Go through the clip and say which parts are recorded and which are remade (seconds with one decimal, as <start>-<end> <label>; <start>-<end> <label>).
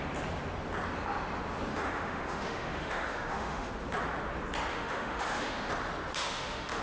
0.0-1.7 recorded; 1.7-3.7 remade; 3.7-4.7 recorded; 4.7-5.7 remade; 5.7-6.2 recorded; 6.2-6.8 remade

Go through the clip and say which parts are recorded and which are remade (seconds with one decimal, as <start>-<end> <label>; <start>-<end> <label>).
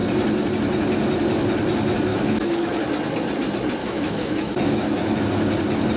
0.0-2.1 recorded; 2.1-2.8 remade; 2.8-3.8 recorded; 3.8-5.2 remade; 5.2-6.0 recorded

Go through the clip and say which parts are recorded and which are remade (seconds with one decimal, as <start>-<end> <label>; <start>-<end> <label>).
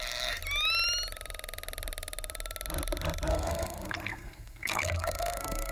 0.0-0.4 remade; 0.4-3.3 recorded; 3.3-5.7 remade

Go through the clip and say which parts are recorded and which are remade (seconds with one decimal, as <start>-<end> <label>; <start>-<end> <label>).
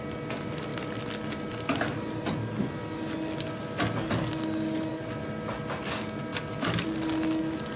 0.0-7.8 recorded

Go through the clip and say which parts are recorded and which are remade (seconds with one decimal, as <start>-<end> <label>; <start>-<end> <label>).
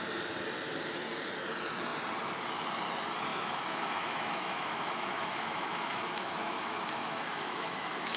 0.0-3.3 recorded; 3.3-8.2 remade